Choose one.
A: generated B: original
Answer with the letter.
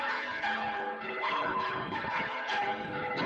A